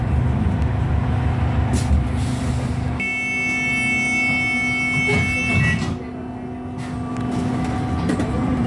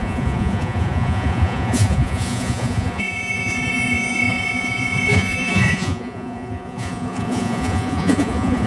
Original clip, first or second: first